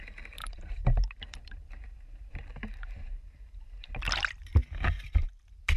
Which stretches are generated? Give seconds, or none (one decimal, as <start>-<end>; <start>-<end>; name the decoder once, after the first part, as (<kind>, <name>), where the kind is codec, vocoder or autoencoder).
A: 0.4-3.9 (vocoder, BigVGAN v2)